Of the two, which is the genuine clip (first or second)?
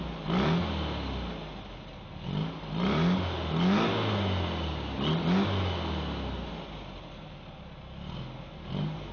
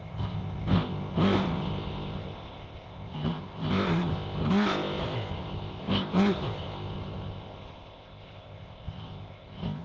first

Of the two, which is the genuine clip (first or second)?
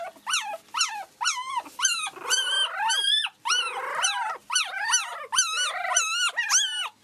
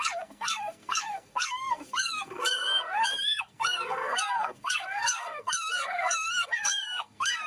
first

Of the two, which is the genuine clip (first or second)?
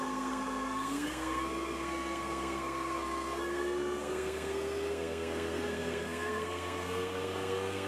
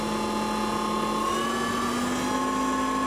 second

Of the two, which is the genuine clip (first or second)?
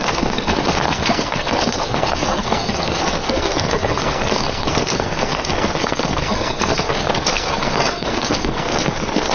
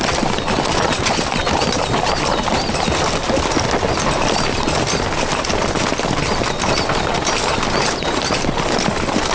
second